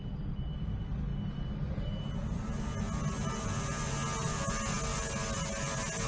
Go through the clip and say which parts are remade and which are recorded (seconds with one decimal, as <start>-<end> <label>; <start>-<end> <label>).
0.0-6.1 recorded